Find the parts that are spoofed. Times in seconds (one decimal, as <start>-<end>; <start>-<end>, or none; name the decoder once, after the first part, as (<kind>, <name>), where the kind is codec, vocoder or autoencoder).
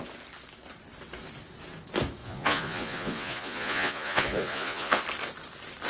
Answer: 2.2-5.0 (vocoder, Vocos)